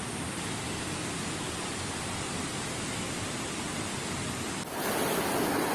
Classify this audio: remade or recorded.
recorded